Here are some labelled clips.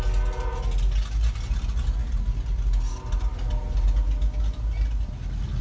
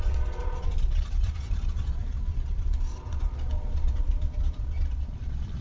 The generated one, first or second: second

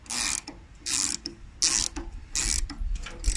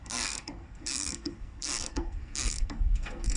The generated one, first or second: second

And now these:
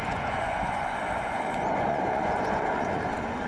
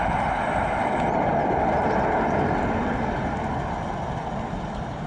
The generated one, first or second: first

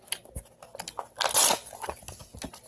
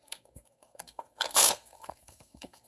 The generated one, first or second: second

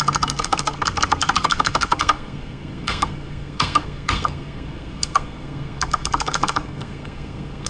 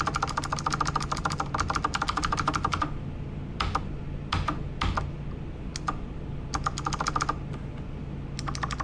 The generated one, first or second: first